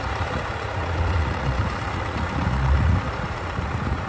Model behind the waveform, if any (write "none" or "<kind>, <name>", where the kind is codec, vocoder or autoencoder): vocoder, Vocos